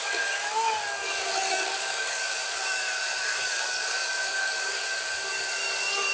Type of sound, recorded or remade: remade